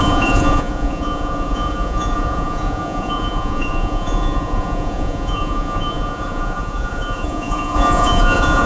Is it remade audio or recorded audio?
remade